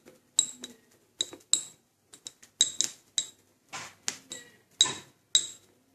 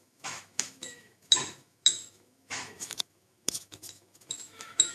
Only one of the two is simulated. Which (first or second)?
second